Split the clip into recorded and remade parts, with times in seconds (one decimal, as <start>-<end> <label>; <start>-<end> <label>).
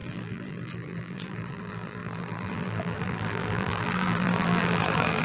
0.0-5.2 remade